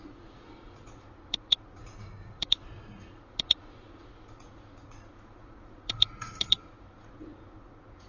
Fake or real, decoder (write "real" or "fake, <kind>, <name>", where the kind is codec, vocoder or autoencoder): fake, vocoder, Vocos